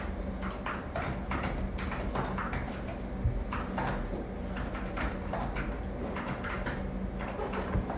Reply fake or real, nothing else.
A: real